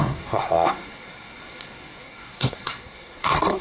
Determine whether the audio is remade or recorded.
remade